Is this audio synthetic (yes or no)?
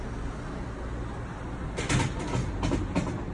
no